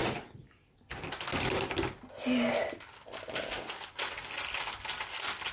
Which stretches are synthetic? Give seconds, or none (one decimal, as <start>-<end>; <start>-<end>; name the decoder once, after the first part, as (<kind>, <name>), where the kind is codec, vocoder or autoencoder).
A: none